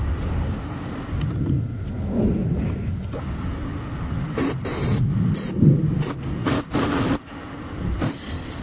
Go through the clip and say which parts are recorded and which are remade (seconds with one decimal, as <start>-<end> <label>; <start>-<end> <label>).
0.0-8.6 recorded